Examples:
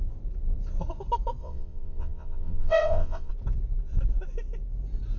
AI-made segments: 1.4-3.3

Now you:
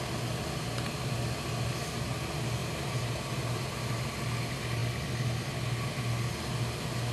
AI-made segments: 2.6-4.2

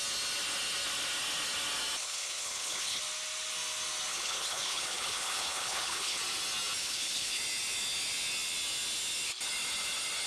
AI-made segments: 2.0-3.0; 4.1-6.2; 6.8-7.4

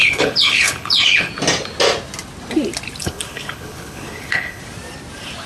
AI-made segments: 0.0-1.3; 3.0-4.6

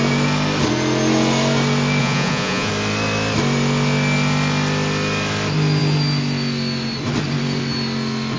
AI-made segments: 2.0-2.7

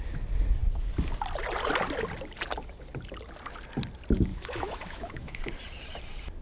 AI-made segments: 4.3-5.4

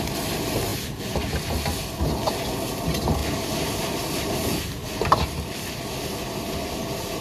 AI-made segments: 0.7-2.0; 3.2-5.6